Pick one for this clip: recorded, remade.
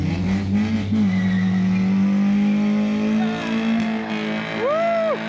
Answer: recorded